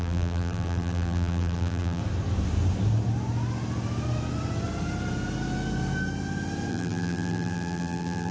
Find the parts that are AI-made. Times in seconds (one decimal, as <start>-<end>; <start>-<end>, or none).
0.0-2.0; 6.7-8.3